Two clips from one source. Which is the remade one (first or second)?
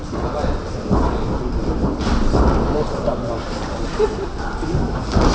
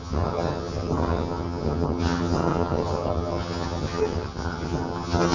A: second